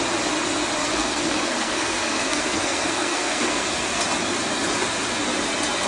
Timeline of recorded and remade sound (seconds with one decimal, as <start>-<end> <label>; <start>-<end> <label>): 0.0-0.8 recorded; 0.8-4.0 remade; 4.0-5.9 recorded